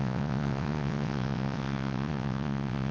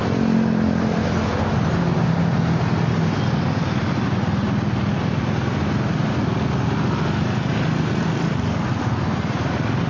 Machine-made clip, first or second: first